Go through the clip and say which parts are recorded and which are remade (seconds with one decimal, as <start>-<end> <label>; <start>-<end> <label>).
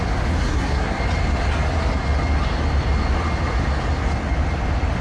0.0-0.4 recorded; 0.4-1.0 remade; 1.0-5.0 recorded